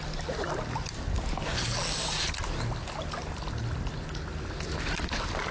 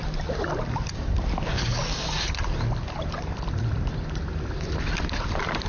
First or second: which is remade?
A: second